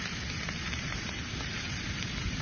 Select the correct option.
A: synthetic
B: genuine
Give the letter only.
A